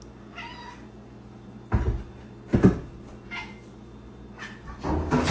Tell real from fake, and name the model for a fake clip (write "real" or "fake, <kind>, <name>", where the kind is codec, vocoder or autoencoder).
real